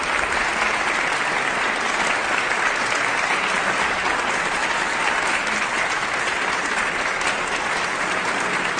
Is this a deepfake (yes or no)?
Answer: no